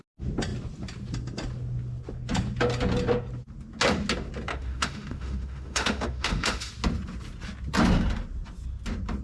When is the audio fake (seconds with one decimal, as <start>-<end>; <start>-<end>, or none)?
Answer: 4.5-6.7